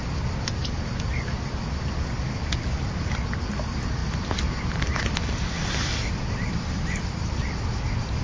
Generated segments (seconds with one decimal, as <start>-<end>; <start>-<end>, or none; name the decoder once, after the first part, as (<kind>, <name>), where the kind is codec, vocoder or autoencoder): none